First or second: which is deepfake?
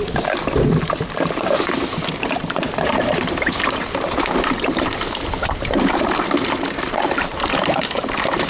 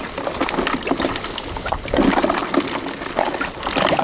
first